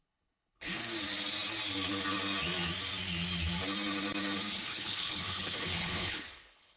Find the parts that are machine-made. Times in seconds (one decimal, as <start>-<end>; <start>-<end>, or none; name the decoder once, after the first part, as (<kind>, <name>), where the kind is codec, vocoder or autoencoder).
0.0-0.8 (codec, HILCodec); 4.5-6.8